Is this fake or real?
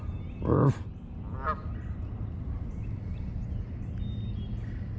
real